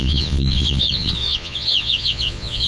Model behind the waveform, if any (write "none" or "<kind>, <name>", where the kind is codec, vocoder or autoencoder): vocoder, Vocos